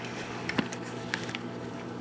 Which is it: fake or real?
fake